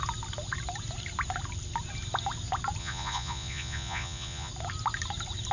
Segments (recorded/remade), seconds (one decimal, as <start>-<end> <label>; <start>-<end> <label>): 0.0-2.8 recorded; 2.8-4.5 remade; 4.5-5.5 recorded